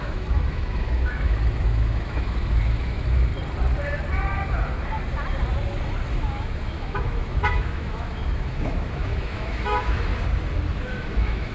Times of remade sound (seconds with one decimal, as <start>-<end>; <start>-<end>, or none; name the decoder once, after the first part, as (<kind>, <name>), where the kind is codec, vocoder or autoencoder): 0.0-3.3 (autoencoder, DAC-VAE); 6.1-10.1; 10.7-11.5